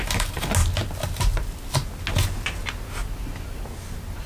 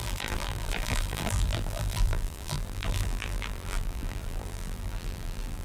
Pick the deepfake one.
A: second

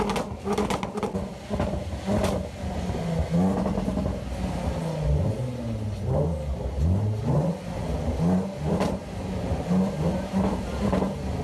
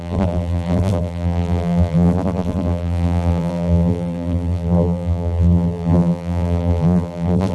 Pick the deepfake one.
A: second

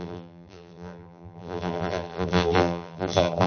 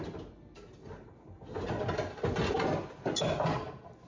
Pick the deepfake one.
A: first